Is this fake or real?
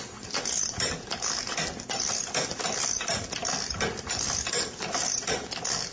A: real